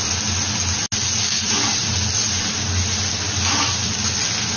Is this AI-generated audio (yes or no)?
no